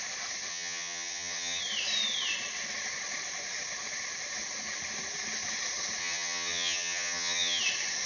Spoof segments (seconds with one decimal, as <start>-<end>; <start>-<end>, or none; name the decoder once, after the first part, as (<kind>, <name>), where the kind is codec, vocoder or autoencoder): 0.5-1.6 (vocoder, HiFi-GAN); 6.0-7.6

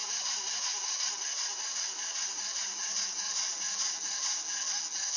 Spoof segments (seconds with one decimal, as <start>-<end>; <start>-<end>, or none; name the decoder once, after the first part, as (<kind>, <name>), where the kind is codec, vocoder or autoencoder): none

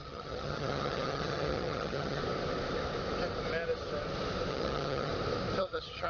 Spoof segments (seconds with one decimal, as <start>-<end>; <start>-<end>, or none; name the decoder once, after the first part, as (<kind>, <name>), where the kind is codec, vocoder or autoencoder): 0.0-2.2 (vocoder, HiFi-GAN); 4.5-5.1; 5.6-6.1

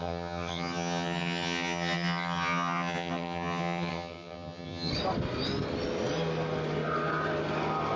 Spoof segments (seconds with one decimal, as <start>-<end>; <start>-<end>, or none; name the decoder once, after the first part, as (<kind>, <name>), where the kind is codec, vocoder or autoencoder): 0.0-4.9 (vocoder, HiFi-GAN)

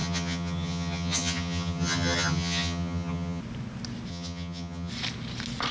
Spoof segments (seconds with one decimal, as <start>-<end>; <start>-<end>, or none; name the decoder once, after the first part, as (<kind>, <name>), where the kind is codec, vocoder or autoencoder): 0.0-3.4 (vocoder, HiFi-GAN); 4.1-4.9

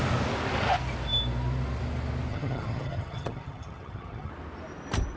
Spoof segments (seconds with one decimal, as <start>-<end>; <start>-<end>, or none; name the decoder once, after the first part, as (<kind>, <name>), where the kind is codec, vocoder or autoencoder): 2.3-4.3 (vocoder, HiFi-GAN)